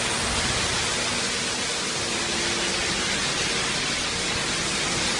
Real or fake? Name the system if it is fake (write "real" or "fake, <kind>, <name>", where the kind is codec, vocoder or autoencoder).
real